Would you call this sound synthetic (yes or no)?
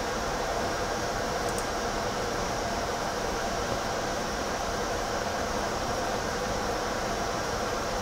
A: yes